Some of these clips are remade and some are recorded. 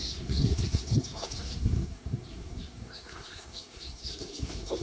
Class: remade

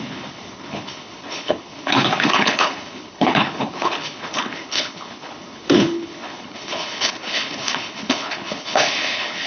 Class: remade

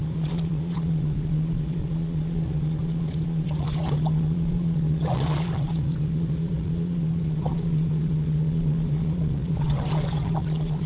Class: remade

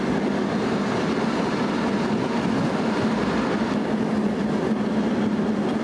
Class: recorded